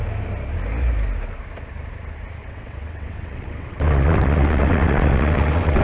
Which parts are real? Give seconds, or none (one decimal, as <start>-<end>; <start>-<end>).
0.0-2.4